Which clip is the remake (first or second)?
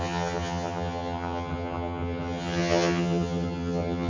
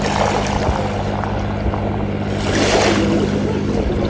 first